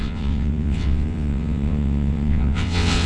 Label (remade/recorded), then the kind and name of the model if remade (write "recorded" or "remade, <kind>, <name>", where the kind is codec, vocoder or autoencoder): remade, vocoder, WaveNeXt